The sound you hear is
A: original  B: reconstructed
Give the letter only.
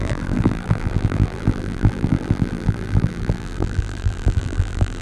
B